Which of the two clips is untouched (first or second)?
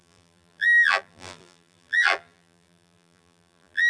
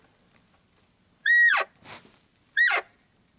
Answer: second